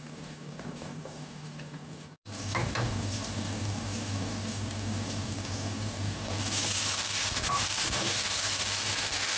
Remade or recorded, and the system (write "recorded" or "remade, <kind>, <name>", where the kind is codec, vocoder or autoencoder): remade, codec, DAC